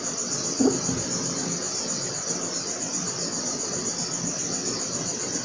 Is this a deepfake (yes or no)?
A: no